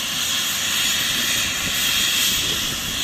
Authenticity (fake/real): real